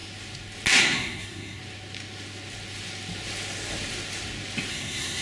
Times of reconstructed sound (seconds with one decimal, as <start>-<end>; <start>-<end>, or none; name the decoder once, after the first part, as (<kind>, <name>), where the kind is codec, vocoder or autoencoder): 0.8-1.6 (codec, SNAC); 4.7-5.2